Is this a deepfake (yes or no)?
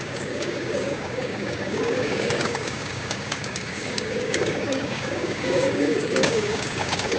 yes